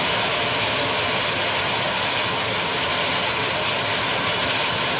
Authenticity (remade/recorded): recorded